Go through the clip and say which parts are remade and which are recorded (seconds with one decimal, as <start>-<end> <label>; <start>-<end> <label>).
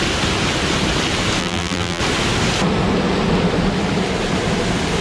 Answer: 0.0-1.4 recorded; 1.4-2.0 remade; 2.0-5.0 recorded